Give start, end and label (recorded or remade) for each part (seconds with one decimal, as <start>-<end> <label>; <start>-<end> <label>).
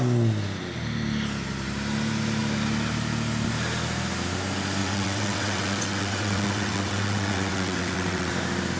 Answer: 0.0-4.8 recorded; 4.8-8.3 remade; 8.3-8.8 recorded